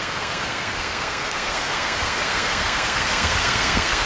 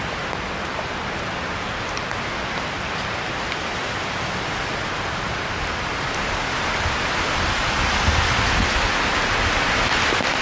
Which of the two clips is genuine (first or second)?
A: second